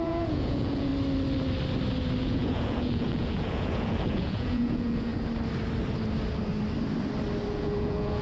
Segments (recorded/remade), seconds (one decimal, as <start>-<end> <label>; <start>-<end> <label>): 0.0-0.9 remade; 0.9-2.2 recorded; 2.2-5.1 remade; 5.1-7.5 recorded; 7.5-8.2 remade